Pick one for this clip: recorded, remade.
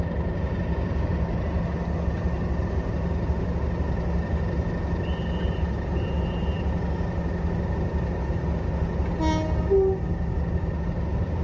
recorded